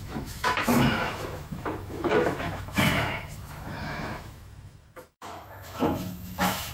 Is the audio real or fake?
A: fake